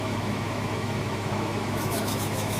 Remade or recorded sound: remade